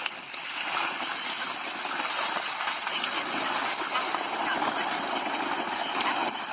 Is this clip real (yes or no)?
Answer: yes